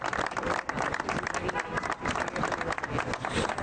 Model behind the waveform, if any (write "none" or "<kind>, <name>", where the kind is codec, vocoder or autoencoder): none